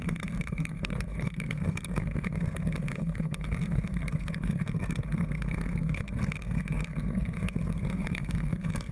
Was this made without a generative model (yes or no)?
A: no